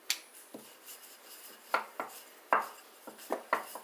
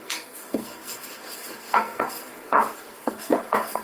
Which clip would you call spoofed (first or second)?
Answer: second